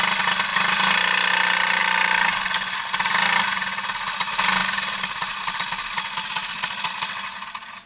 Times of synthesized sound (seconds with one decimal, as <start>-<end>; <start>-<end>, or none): none